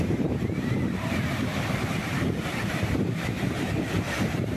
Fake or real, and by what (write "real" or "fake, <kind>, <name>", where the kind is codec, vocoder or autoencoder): fake, vocoder, BigVGAN v2